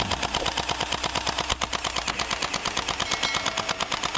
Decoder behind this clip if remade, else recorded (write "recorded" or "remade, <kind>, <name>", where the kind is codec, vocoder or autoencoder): recorded